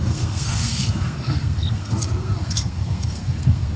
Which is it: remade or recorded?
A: remade